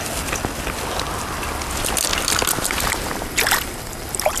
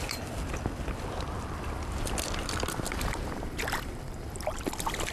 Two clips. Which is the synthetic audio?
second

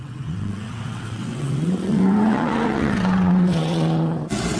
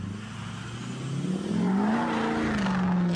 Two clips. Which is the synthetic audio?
first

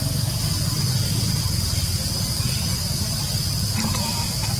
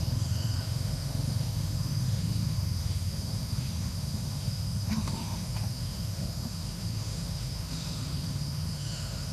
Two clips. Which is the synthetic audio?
second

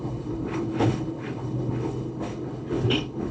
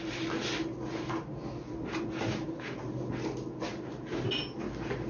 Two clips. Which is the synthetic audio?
first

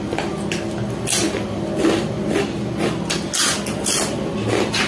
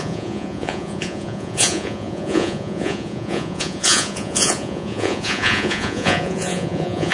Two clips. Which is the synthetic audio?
second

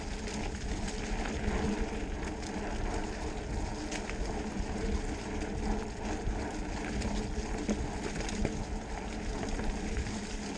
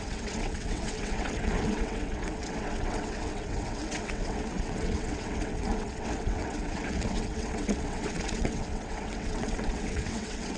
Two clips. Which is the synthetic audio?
second